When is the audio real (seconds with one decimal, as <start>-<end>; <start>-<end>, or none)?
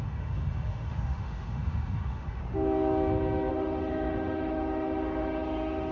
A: 2.4-3.5